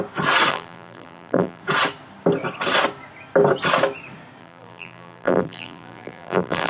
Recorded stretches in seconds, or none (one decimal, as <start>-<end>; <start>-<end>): 0.0-0.5; 1.6-4.4